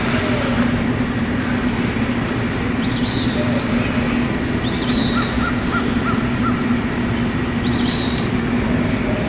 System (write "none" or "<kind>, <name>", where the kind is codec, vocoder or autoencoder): none